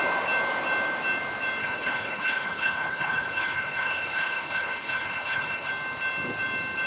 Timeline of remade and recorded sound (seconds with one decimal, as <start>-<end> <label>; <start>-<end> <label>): 0.0-1.6 recorded; 1.6-5.7 remade; 5.7-6.9 recorded